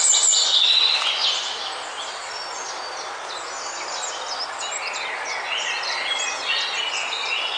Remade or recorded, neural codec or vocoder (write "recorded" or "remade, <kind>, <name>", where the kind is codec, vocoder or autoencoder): recorded